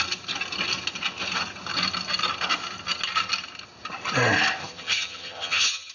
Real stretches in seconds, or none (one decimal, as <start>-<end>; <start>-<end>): 0.0-4.6